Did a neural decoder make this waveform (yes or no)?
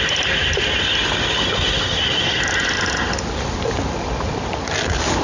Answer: no